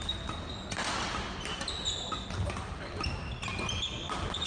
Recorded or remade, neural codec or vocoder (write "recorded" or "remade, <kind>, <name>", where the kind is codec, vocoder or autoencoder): recorded